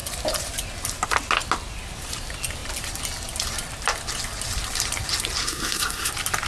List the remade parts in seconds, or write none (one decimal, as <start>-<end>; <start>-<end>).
5.4-6.1